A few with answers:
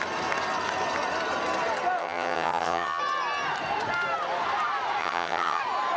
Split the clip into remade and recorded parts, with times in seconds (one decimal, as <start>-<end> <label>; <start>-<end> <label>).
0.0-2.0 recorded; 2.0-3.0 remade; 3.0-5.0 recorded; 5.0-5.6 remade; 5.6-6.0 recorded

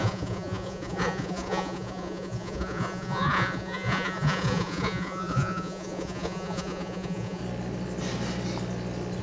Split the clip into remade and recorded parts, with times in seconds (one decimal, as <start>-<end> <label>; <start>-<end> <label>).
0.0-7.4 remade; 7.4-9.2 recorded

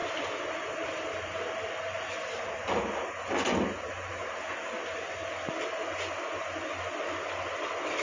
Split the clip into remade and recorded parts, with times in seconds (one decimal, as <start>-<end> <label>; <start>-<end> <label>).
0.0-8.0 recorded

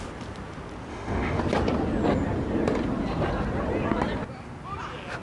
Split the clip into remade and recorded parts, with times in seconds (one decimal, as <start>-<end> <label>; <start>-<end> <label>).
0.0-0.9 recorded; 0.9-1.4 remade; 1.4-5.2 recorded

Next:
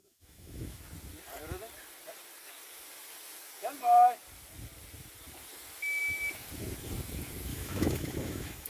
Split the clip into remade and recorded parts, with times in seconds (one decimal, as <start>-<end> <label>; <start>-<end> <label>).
0.0-0.8 remade; 0.8-7.5 recorded; 7.5-8.7 remade